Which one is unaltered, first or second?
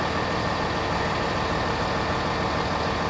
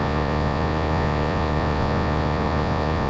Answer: first